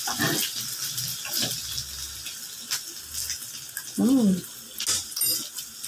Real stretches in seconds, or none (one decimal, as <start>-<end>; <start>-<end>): 0.0-5.9